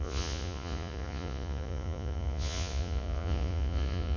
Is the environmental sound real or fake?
fake